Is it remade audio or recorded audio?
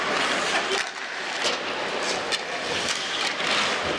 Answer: recorded